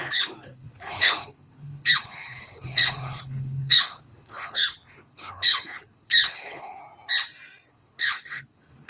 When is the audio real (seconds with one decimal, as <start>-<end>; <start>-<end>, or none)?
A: 6.8-7.7